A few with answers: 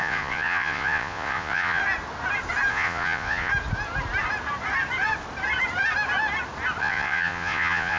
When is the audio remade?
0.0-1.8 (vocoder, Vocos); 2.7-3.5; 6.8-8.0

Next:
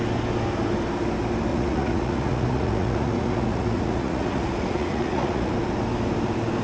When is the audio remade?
1.5-5.5 (vocoder, Vocos)